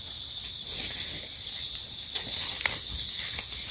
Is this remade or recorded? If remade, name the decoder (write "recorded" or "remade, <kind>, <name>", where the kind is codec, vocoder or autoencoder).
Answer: recorded